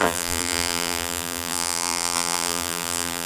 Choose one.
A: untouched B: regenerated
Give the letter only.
B